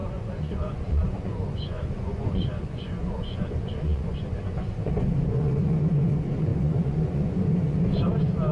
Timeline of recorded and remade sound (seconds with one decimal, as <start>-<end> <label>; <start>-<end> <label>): 0.0-8.5 remade